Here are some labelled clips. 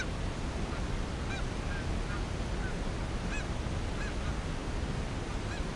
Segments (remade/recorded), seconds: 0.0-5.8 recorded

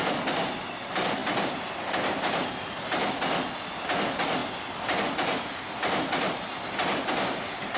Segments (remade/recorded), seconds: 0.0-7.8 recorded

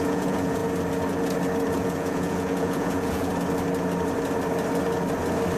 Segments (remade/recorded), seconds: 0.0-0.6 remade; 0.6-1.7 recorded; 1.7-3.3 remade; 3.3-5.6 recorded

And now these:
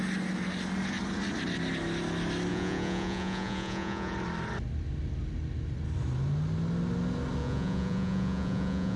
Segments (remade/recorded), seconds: 0.0-2.5 recorded; 2.5-4.1 remade; 4.1-7.4 recorded; 7.4-9.0 remade

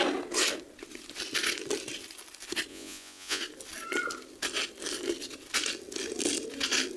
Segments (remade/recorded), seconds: 0.0-2.7 recorded; 2.7-3.4 remade; 3.4-7.0 recorded

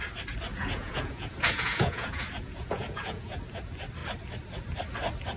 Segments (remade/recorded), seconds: 0.0-0.5 recorded; 0.5-3.4 remade; 3.4-5.4 recorded

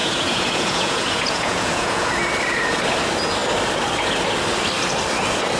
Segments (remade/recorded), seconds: 0.0-2.1 remade; 2.1-5.6 recorded